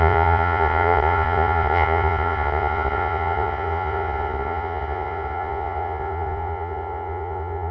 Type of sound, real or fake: fake